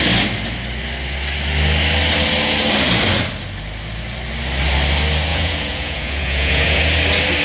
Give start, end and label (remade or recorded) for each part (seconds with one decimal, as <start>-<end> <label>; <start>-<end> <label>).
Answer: 0.0-5.3 recorded; 5.3-6.8 remade; 6.8-7.4 recorded